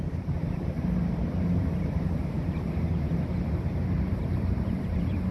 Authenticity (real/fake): fake